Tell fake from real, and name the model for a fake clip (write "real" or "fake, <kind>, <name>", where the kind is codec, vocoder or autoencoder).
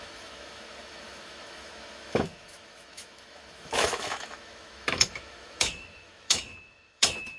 fake, autoencoder, DAC-VAE